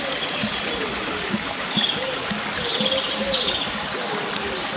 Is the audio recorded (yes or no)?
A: yes